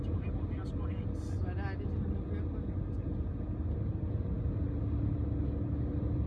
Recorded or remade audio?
recorded